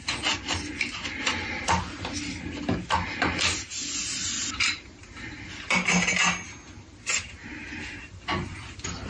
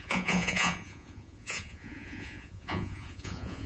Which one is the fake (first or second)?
second